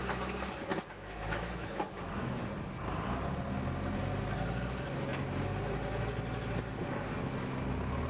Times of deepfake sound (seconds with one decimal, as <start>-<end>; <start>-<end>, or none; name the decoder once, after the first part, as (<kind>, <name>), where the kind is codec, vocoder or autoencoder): 0.7-2.4 (autoencoder, DAC-VAE)